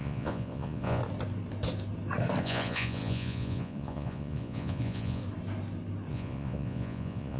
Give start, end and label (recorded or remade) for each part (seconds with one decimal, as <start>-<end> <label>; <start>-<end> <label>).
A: 0.0-1.0 remade; 1.0-2.4 recorded; 2.4-5.2 remade; 5.2-6.1 recorded; 6.1-7.4 remade